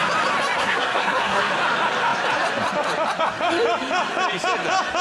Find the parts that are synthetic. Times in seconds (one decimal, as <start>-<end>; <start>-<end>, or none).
0.6-1.5